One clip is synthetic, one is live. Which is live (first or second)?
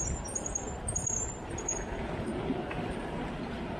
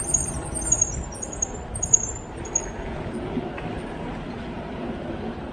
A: second